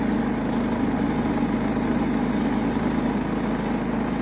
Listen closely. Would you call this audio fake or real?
real